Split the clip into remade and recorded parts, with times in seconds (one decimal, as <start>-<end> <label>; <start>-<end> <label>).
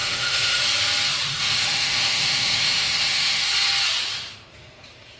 0.0-0.6 remade; 0.6-1.3 recorded; 1.3-3.5 remade; 3.5-5.2 recorded